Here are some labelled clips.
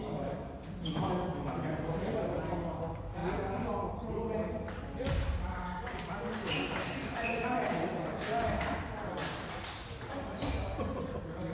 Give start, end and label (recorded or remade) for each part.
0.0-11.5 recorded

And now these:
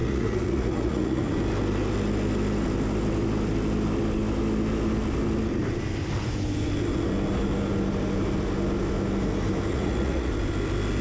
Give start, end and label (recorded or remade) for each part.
0.0-1.2 remade; 1.2-9.7 recorded; 9.7-10.3 remade; 10.3-11.0 recorded